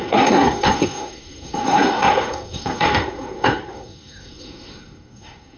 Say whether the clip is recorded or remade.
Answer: remade